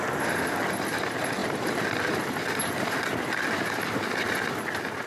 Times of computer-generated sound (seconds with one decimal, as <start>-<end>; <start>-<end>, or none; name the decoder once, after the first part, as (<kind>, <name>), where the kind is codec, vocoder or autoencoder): none